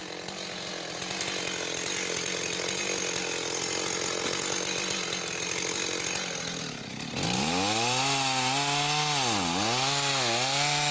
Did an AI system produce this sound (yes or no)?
no